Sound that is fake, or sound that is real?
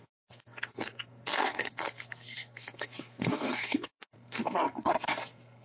fake